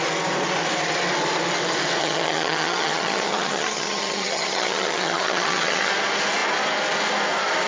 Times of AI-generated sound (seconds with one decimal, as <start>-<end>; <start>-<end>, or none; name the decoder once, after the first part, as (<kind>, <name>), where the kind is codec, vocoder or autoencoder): 2.0-5.9 (vocoder, HiFi-GAN)

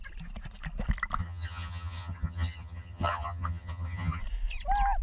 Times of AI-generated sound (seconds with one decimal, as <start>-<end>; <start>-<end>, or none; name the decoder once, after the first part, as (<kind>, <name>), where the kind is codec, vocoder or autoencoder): 1.2-4.2 (vocoder, HiFi-GAN)

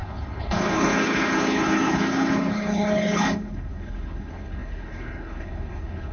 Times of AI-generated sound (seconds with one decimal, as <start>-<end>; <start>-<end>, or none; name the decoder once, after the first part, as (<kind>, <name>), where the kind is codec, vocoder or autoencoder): 0.0-6.1 (codec, HILCodec)